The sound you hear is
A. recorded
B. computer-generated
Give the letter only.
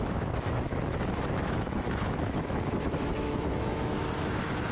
B